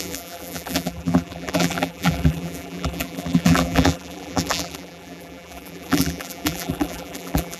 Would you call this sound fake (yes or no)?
yes